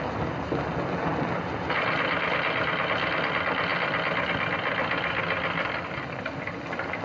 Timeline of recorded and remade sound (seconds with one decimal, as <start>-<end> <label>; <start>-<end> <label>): 0.0-7.0 recorded